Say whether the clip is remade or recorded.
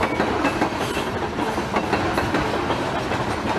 recorded